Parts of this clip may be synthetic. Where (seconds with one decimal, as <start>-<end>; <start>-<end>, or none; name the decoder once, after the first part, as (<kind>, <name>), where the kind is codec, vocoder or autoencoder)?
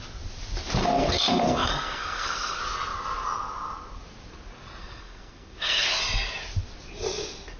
0.8-2.6 (codec, SNAC); 4.8-5.9